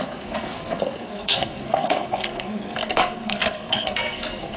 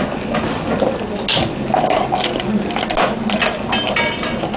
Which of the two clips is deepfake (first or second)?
first